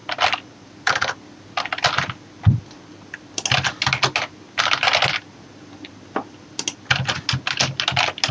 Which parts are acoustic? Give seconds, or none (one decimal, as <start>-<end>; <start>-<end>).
0.0-8.3

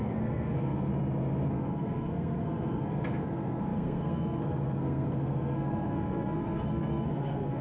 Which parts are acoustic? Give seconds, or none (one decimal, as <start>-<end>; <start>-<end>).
0.9-1.5

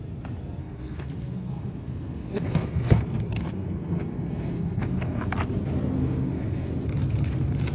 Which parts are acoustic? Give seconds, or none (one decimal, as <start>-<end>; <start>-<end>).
0.0-0.6; 5.2-6.0; 6.7-7.7

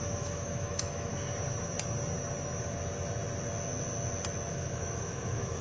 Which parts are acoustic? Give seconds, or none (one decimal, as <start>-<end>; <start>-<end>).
1.1-4.5

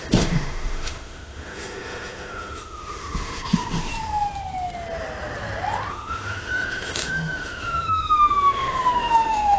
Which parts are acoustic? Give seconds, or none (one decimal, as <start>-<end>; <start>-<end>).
3.9-5.9